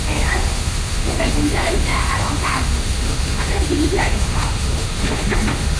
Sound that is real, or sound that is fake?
fake